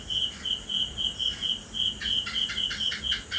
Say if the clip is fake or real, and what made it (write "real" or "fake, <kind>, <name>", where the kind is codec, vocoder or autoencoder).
real